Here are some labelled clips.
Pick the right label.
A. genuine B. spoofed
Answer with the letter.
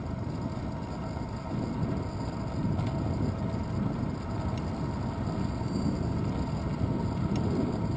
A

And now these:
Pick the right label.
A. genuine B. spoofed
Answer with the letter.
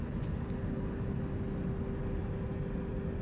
A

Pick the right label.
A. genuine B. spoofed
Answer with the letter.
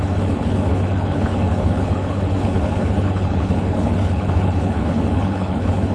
B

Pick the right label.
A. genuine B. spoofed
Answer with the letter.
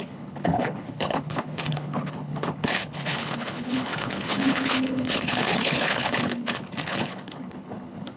B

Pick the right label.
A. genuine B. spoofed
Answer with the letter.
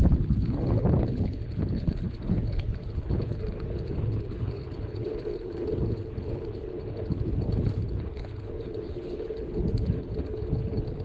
B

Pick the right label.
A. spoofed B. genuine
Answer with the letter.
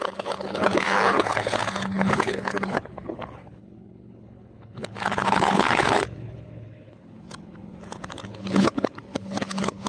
A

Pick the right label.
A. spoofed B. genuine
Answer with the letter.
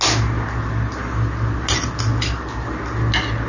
B